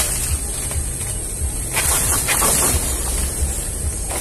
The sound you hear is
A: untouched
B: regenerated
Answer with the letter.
A